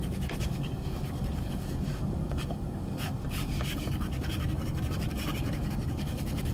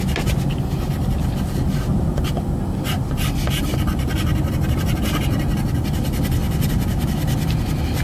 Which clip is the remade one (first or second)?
first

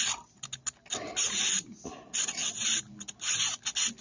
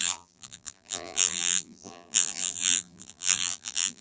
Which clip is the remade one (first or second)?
second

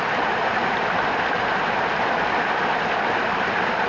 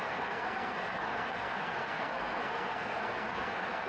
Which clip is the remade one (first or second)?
second